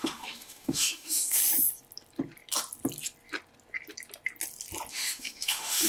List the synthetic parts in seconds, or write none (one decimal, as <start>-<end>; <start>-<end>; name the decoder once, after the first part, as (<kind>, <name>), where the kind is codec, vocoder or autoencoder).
0.0-1.4 (autoencoder, DAC-VAE); 4.9-5.9